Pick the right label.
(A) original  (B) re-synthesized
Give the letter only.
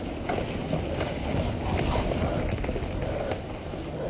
A